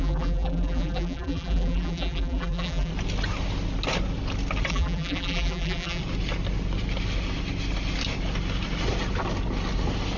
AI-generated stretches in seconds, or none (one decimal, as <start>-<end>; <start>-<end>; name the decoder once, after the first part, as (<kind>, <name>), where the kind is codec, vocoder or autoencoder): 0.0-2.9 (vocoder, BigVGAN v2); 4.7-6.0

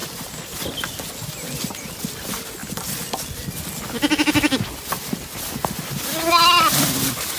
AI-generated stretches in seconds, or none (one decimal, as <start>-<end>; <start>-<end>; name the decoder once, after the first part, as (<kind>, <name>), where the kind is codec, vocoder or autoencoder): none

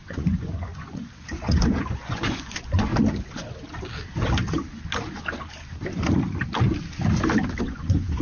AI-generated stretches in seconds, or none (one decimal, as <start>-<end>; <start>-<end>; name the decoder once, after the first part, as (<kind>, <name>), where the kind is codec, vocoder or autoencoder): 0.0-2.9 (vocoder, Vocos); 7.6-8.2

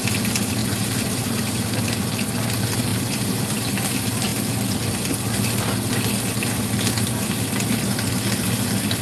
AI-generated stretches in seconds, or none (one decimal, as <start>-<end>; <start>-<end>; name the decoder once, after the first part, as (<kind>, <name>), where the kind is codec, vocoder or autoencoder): 0.6-1.9 (vocoder, BigVGAN v2); 2.9-3.6

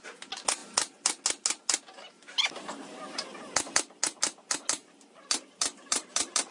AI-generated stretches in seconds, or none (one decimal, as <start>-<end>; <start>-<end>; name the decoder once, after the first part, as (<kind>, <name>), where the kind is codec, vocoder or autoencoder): 4.8-6.5 (vocoder, BigVGAN v2)

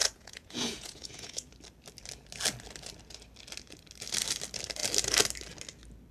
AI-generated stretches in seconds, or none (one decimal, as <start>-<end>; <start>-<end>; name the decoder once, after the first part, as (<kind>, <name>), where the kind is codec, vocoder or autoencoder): 0.0-1.5 (vocoder, Vocos)

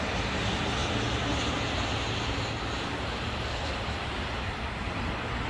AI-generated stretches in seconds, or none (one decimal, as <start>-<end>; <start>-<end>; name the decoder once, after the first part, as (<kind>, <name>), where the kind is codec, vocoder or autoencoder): none

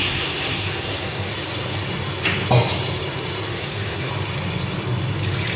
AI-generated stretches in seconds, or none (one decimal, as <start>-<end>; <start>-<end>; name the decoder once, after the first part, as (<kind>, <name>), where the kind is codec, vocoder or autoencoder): 0.0-1.3 (codec, SNAC); 3.5-4.1